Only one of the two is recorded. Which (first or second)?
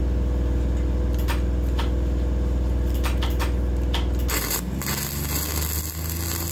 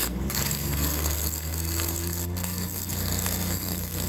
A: first